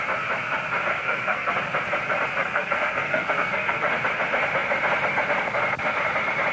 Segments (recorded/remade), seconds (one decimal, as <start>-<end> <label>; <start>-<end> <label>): 0.0-0.9 recorded; 0.9-1.5 remade; 1.5-2.4 recorded; 2.4-3.9 remade; 3.9-6.5 recorded